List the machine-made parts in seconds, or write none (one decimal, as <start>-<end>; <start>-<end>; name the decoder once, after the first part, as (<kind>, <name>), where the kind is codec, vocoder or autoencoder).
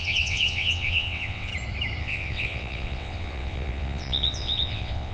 0.0-1.5 (vocoder, WaveNeXt); 2.0-5.1